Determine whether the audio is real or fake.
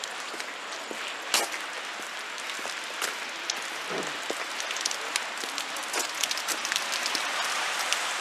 real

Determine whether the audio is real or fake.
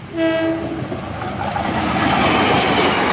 real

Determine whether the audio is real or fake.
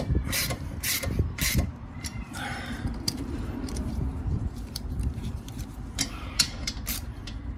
fake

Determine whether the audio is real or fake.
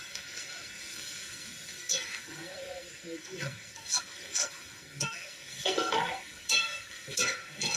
fake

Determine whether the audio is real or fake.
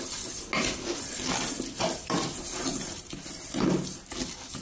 real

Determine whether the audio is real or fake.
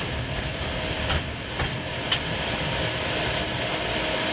real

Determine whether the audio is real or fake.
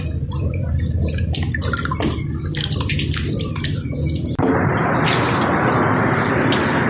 real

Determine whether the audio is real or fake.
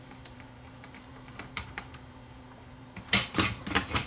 fake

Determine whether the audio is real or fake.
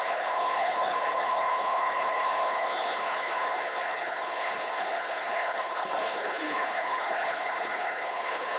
fake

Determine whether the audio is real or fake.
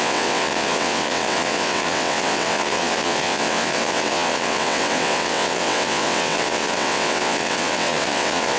fake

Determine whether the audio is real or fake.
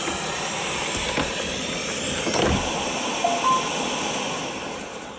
real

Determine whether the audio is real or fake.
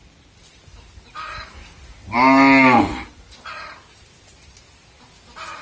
real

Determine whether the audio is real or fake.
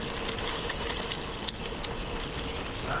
real